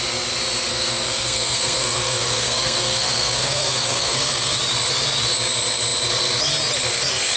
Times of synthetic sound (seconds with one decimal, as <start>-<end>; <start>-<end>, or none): 0.7-4.6